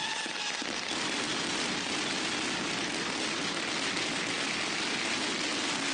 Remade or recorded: recorded